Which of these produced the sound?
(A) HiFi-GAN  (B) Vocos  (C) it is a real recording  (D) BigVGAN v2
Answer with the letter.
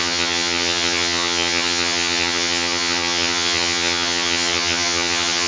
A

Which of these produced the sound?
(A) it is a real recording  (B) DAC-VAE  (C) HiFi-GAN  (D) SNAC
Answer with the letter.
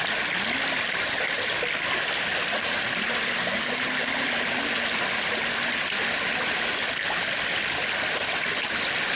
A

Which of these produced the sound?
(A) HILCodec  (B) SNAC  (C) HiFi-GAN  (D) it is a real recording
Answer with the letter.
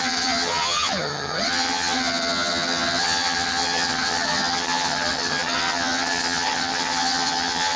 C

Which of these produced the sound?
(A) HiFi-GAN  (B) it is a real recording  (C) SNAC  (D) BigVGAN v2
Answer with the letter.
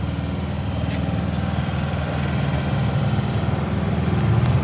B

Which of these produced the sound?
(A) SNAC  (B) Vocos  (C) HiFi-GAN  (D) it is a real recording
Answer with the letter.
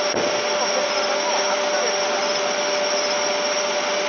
D